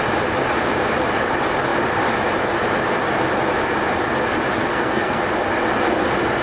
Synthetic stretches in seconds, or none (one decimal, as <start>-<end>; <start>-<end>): 4.7-5.2